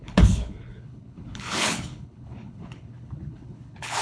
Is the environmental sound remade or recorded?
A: remade